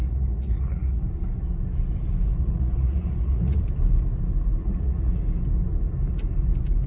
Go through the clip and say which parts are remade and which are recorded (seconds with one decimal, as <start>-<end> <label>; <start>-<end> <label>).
0.0-1.0 remade; 1.0-2.4 recorded; 2.4-3.6 remade; 3.6-4.6 recorded; 4.6-5.2 remade; 5.2-6.9 recorded

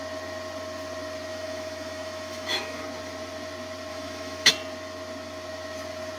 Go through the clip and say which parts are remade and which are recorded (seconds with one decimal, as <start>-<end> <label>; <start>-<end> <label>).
0.0-1.3 recorded; 1.3-2.8 remade; 2.8-3.9 recorded; 3.9-4.5 remade; 4.5-6.2 recorded